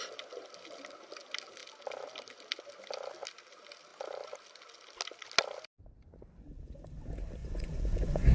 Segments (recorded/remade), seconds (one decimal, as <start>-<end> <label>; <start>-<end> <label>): 0.0-7.4 recorded; 7.4-8.3 remade

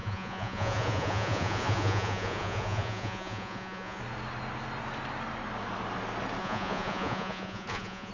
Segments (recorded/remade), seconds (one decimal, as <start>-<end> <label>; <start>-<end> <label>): 0.0-4.0 remade; 4.0-6.4 recorded; 6.4-8.1 remade

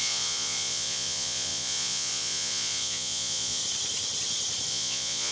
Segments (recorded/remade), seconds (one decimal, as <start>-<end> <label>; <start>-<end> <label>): 0.0-3.6 remade; 3.6-4.7 recorded; 4.7-5.3 remade

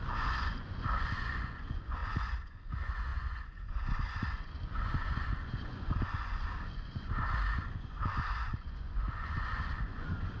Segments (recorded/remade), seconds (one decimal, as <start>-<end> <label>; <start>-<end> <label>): 0.0-10.4 remade

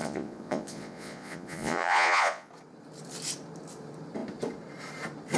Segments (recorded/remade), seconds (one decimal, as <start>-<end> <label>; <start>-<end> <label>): 0.0-2.5 remade; 2.5-5.4 recorded